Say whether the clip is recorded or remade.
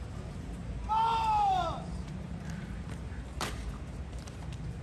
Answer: remade